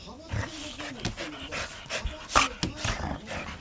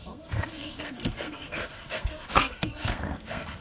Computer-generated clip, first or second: second